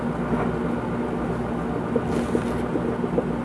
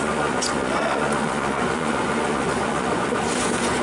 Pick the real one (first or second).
first